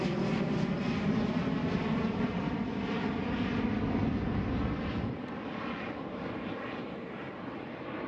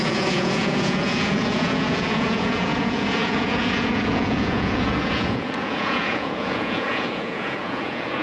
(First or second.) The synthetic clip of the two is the second